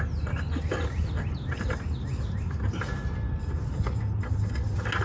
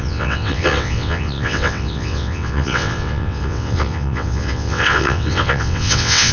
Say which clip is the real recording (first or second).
first